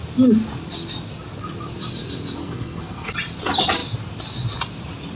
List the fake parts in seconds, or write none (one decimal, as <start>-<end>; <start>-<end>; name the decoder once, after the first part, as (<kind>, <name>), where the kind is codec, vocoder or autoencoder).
2.4-3.1 (codec, SNAC)